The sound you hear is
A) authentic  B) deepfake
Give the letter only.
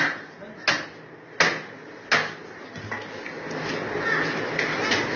A